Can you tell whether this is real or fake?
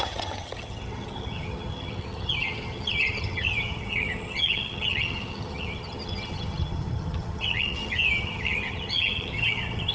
fake